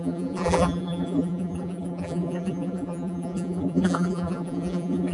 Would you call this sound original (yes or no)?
no